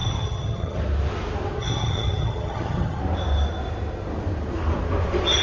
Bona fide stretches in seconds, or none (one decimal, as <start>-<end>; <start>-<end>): 0.8-1.6; 3.0-5.4